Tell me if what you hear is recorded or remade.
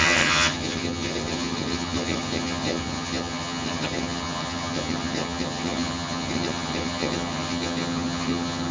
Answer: remade